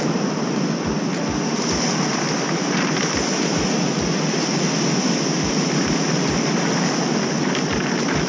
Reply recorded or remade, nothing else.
recorded